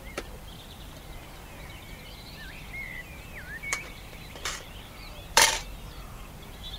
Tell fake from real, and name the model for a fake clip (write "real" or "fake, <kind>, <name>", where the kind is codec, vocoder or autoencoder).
fake, vocoder, BigVGAN v2